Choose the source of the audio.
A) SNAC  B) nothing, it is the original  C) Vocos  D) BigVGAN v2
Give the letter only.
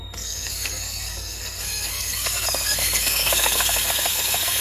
A